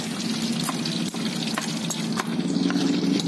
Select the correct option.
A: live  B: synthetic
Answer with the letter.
A